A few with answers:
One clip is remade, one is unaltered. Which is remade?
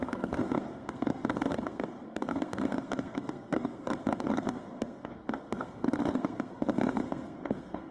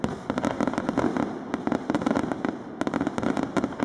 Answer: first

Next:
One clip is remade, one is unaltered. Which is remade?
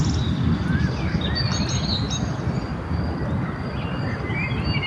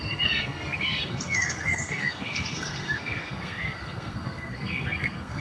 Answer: second